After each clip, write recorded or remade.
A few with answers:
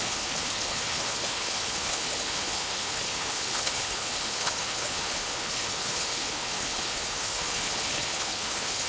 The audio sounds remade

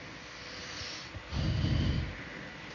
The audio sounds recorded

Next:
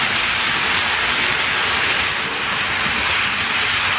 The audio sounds recorded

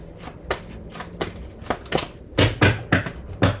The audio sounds recorded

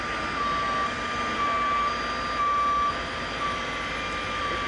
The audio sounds recorded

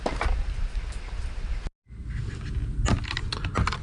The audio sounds recorded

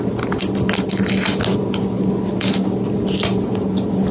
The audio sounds recorded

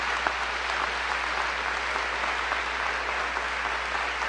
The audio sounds recorded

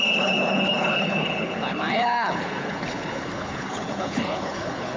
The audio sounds remade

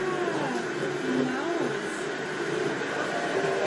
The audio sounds recorded